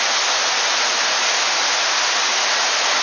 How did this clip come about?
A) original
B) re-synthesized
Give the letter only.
A